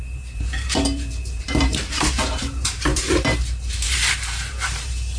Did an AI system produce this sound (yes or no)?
yes